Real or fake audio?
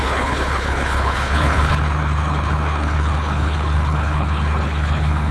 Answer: fake